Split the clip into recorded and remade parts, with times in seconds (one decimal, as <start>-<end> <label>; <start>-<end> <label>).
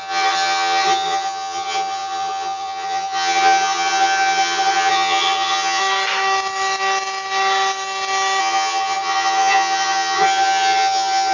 0.0-5.8 remade; 5.8-8.4 recorded; 8.4-11.3 remade